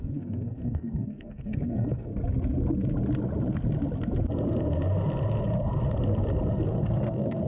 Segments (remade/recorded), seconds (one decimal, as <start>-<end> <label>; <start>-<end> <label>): 0.0-2.1 remade; 2.1-6.5 recorded; 6.5-7.5 remade